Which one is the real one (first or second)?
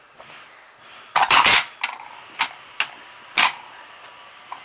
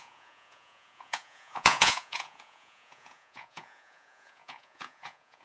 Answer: first